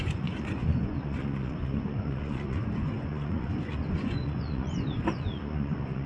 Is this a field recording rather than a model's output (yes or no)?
no